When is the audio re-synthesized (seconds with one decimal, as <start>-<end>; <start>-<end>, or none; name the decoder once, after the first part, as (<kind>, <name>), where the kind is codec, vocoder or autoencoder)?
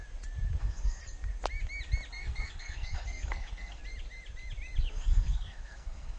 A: 0.6-1.0 (codec, SNAC); 2.1-3.8; 4.9-6.2